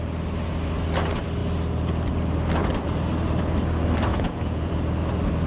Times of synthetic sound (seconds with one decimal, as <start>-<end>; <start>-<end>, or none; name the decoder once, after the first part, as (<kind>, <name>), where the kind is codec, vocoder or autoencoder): 4.1-4.7 (vocoder, Vocos)